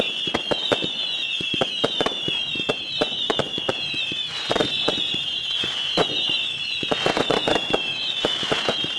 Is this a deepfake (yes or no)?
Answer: yes